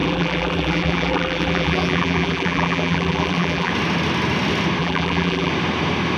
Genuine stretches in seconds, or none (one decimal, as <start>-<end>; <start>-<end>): 3.7-4.8; 5.5-6.2